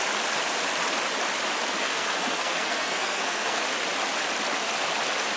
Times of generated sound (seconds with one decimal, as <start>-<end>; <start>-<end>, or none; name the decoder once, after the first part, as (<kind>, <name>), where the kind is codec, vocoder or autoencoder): 1.8-3.6 (codec, SNAC)